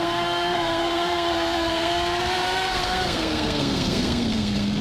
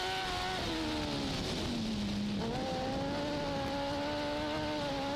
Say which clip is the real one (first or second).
second